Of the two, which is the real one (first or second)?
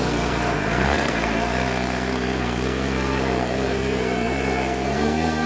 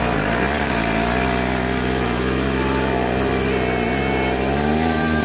second